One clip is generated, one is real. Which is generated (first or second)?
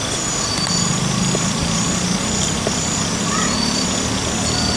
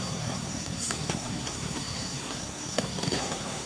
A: second